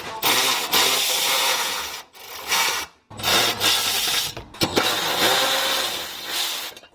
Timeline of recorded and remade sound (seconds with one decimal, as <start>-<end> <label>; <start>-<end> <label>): 0.0-1.2 recorded; 1.2-2.3 remade; 2.3-6.9 recorded